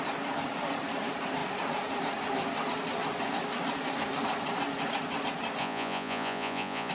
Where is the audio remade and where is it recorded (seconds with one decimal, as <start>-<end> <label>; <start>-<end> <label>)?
0.0-5.6 recorded; 5.6-6.9 remade